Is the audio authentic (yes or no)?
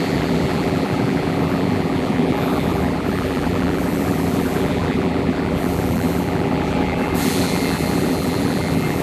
no